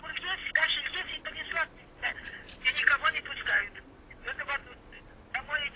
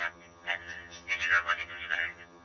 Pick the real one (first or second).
first